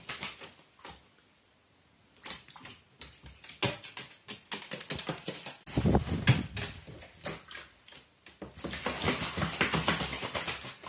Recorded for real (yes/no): yes